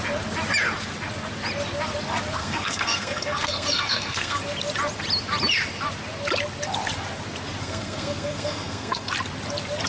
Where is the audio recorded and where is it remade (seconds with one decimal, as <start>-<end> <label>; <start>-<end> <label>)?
0.0-2.4 recorded; 2.4-4.4 remade; 4.4-7.6 recorded; 7.6-9.1 remade; 9.1-9.9 recorded